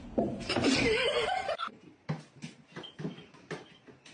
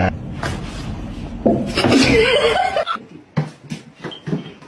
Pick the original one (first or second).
second